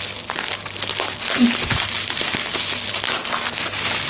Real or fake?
real